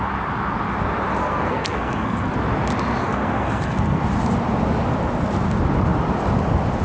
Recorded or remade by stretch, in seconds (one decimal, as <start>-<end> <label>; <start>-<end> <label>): 0.0-1.2 recorded; 1.2-2.3 remade; 2.3-3.0 recorded; 3.0-4.0 remade; 4.0-6.8 recorded